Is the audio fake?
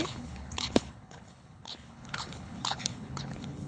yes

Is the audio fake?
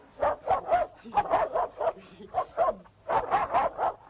no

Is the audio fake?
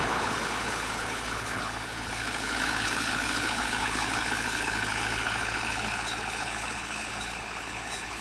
yes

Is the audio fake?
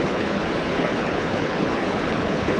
yes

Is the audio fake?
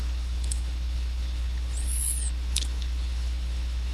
yes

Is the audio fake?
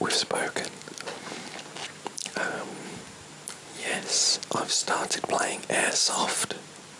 no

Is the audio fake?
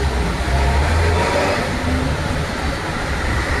no